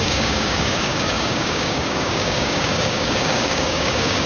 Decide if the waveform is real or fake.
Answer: fake